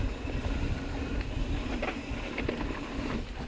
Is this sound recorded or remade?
remade